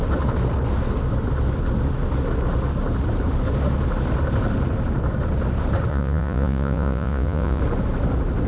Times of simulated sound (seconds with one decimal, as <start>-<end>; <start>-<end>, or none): 5.9-7.6